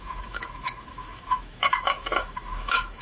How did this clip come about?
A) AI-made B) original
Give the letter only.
A